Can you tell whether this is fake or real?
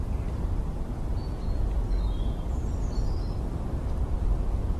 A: fake